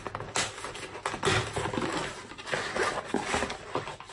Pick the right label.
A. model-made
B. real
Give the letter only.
B